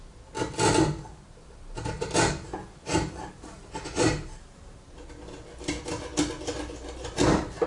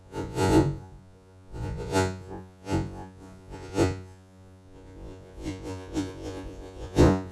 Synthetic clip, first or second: second